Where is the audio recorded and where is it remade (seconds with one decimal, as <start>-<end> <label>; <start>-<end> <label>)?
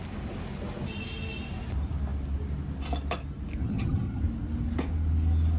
0.0-3.6 recorded; 3.6-4.2 remade; 4.2-5.6 recorded